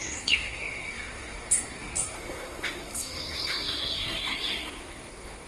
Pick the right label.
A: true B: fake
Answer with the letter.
B